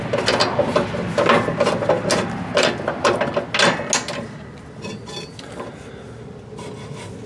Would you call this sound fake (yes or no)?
no